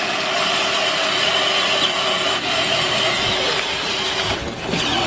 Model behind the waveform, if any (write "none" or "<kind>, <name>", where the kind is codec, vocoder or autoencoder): none